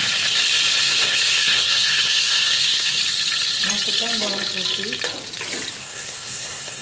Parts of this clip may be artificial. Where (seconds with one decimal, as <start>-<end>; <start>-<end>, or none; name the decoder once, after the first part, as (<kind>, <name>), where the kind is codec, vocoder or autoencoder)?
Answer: 0.8-3.0 (codec, SNAC); 5.8-6.8